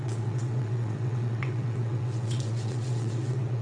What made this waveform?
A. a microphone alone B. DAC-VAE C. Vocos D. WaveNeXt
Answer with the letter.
D